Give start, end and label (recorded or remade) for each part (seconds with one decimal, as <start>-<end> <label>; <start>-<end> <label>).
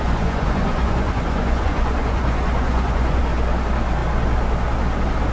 0.0-3.2 remade; 3.2-5.3 recorded